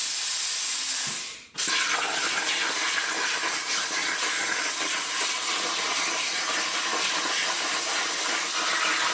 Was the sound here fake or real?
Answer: real